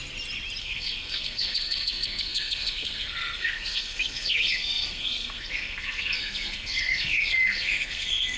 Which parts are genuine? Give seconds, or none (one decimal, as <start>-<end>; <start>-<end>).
0.0-0.6